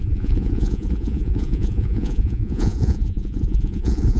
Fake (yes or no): yes